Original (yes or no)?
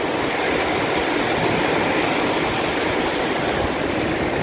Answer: yes